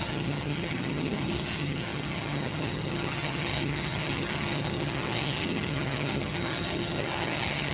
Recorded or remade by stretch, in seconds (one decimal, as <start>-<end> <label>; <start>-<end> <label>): 0.0-7.7 remade